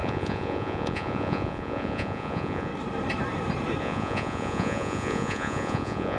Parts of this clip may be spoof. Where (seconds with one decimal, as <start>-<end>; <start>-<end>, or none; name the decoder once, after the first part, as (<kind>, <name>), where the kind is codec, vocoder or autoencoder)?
0.0-2.7 (vocoder, Vocos); 3.8-6.2